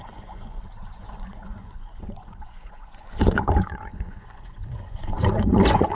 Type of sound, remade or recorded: remade